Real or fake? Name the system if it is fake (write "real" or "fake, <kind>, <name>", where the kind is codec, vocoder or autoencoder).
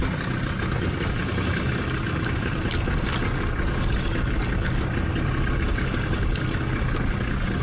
real